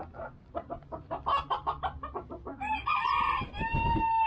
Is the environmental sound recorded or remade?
recorded